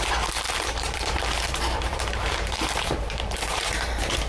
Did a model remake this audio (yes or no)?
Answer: yes